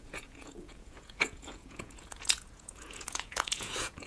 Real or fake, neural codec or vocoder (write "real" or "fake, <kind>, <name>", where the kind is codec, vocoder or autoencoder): fake, vocoder, Vocos